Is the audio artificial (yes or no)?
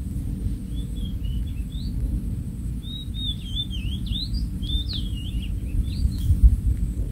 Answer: yes